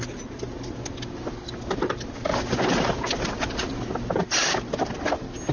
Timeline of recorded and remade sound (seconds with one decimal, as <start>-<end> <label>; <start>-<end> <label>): 0.0-5.5 recorded